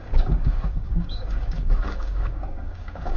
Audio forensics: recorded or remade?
remade